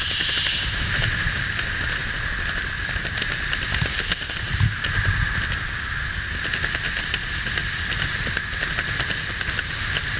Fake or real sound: real